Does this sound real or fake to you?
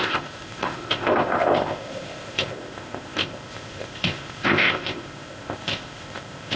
fake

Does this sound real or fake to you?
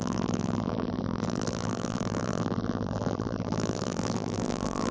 fake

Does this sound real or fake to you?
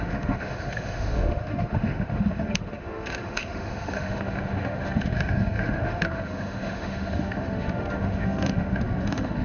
fake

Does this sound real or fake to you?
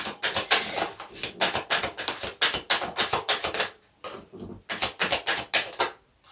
real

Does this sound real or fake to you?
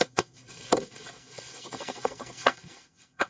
fake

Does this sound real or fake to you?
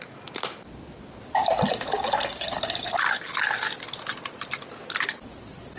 real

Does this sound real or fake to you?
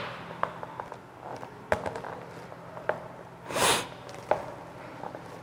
real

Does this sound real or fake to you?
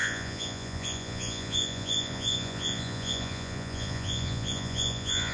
fake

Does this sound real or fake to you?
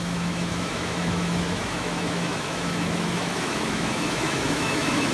fake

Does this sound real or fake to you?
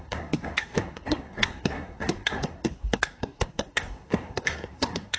fake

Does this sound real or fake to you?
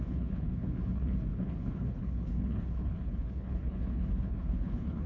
fake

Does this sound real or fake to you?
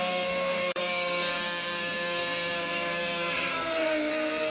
fake